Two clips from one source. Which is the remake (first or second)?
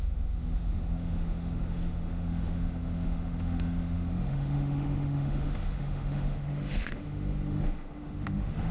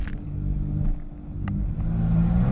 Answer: first